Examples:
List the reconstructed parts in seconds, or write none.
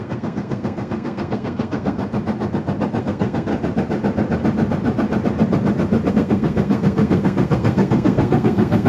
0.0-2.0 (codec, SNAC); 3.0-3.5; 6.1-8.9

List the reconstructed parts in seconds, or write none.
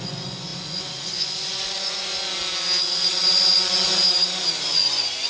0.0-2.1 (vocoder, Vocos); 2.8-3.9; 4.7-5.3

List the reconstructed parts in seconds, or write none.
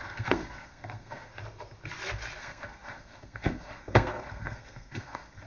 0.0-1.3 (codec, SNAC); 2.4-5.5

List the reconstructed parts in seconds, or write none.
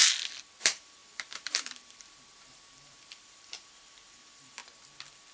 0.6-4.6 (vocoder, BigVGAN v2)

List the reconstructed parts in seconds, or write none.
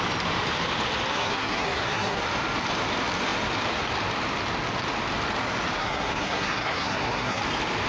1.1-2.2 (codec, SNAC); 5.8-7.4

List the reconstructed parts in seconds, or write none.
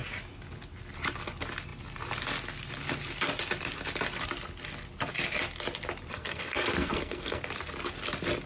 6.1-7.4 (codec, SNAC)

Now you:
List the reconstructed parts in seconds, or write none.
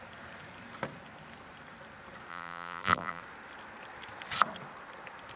2.3-3.2 (vocoder, BigVGAN v2)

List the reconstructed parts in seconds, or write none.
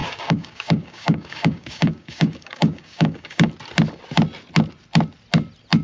0.0-3.5 (codec, DAC)